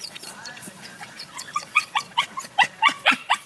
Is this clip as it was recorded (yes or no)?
no